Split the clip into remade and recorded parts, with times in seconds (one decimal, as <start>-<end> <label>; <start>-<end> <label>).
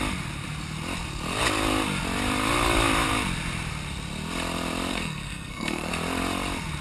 0.0-4.9 recorded; 4.9-5.9 remade; 5.9-6.8 recorded